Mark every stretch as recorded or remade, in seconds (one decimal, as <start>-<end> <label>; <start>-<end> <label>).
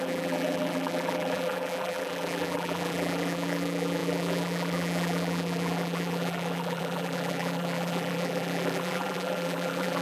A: 0.0-10.0 remade